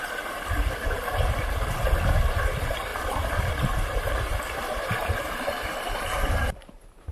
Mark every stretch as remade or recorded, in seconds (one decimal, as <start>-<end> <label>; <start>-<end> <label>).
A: 0.0-2.9 remade; 2.9-3.5 recorded; 3.5-4.3 remade; 4.3-4.9 recorded; 4.9-7.1 remade